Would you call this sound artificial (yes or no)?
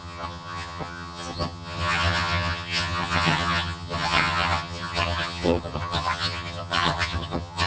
yes